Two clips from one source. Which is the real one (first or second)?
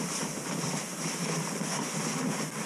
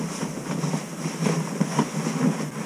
second